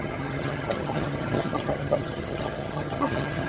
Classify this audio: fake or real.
fake